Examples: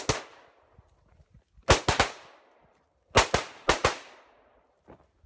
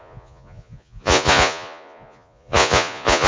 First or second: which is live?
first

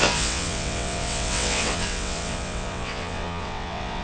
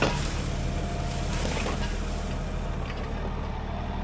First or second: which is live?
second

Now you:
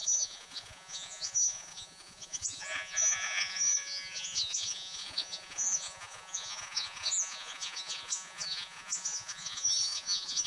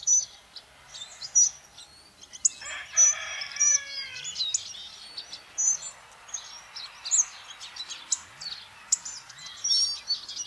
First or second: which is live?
second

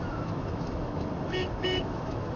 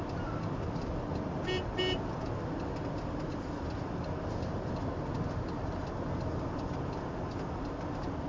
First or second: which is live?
second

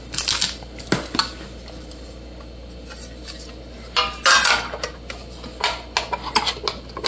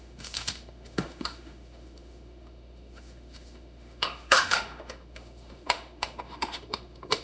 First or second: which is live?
first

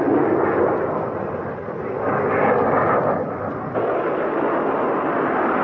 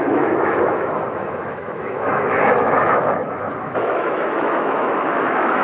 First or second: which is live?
first